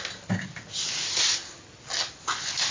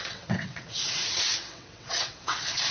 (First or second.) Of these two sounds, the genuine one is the first